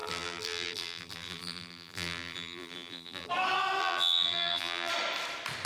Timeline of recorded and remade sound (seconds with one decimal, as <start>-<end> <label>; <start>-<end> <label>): 0.0-3.3 remade; 3.3-3.8 recorded; 3.8-4.9 remade; 4.9-5.7 recorded